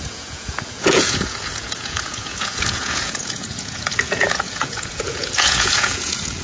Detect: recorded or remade remade